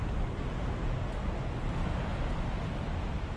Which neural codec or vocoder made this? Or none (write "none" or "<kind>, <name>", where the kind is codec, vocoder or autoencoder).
none